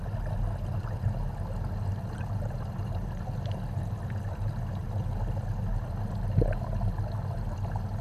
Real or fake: real